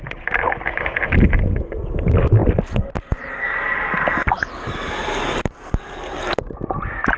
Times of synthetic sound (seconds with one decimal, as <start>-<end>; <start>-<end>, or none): none